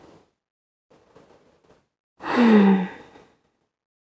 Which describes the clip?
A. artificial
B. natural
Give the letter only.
B